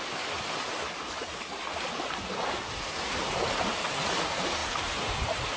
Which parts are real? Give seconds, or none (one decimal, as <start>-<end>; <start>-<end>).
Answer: 0.0-5.6